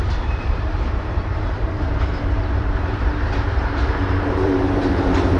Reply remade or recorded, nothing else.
remade